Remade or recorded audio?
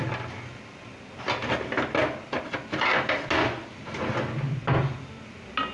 recorded